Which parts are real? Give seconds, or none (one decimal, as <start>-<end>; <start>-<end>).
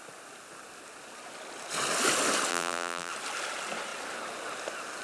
0.0-2.5; 3.1-5.0